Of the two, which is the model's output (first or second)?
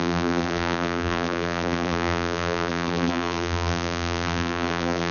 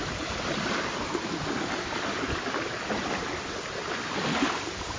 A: first